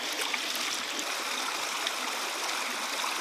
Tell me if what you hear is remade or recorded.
recorded